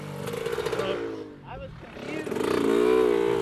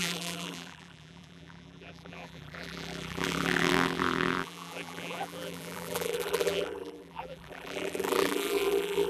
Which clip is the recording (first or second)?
first